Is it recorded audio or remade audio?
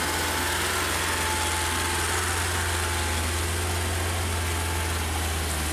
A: recorded